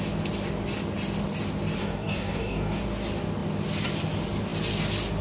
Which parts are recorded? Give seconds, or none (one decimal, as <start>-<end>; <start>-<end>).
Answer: 0.0-1.8; 2.8-5.2